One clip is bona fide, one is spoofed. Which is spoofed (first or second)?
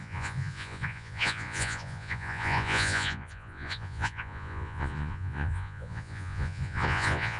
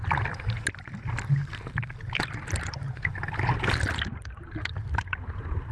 first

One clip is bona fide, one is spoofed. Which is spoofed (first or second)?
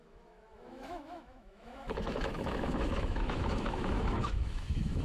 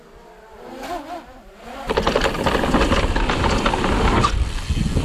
first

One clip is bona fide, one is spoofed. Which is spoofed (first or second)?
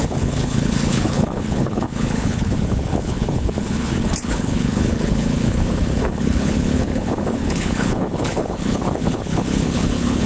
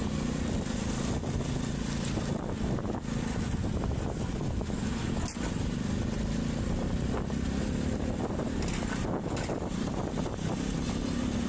first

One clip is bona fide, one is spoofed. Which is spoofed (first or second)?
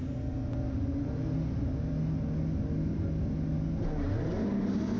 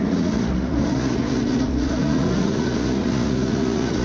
second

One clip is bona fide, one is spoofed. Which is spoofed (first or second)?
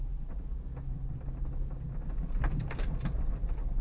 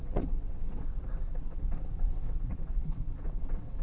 second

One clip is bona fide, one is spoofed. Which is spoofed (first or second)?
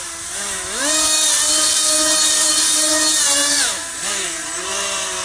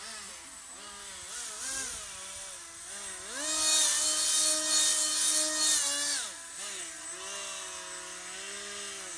first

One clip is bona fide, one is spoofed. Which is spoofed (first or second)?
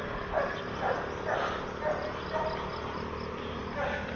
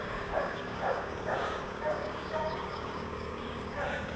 second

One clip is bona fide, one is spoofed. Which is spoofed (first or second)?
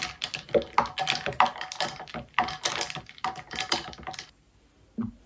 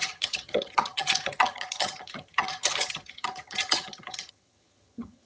second